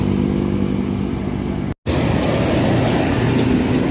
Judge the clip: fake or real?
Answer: real